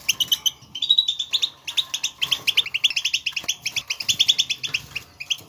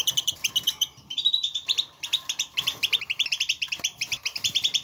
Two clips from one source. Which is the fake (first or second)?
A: second